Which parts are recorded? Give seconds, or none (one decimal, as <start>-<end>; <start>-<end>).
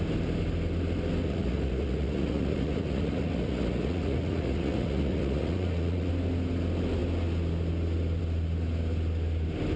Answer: 0.0-1.2; 6.1-9.8